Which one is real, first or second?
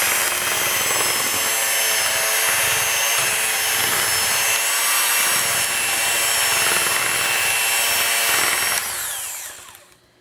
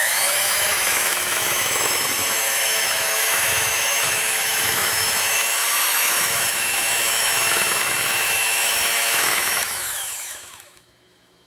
first